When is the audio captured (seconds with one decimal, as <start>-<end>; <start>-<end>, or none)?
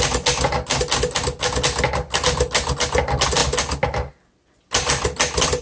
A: 0.0-5.6